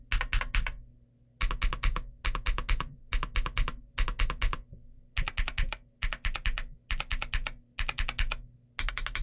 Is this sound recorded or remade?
recorded